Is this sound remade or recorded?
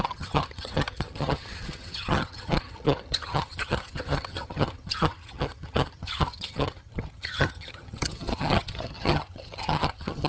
remade